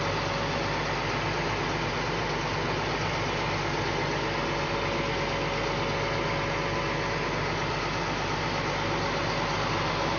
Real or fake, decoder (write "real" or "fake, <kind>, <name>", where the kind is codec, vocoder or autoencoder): real